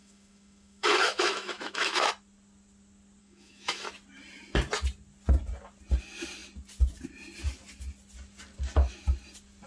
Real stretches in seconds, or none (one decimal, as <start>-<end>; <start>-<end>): 2.1-3.2; 3.9-9.7